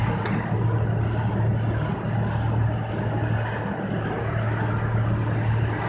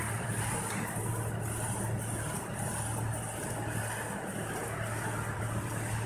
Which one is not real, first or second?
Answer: second